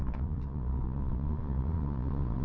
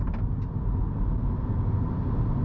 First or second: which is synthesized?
first